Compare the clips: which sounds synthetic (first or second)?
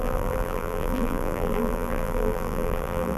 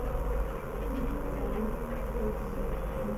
first